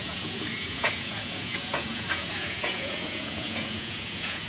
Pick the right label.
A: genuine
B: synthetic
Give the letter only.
B